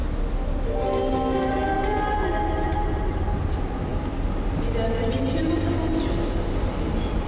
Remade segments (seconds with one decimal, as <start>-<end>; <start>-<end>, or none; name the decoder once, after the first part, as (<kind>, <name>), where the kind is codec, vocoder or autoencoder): none